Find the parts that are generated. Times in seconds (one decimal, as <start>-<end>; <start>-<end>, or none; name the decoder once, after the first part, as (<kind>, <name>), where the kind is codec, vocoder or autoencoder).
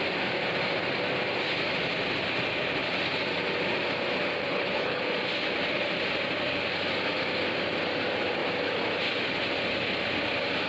4.4-5.0 (codec, HILCodec)